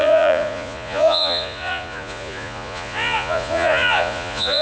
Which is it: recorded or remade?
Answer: remade